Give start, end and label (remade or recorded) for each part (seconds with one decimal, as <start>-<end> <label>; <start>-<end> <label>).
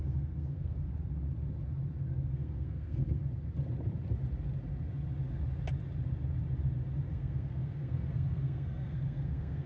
0.0-0.9 remade; 0.9-2.1 recorded; 2.1-3.2 remade; 3.2-7.1 recorded; 7.1-9.7 remade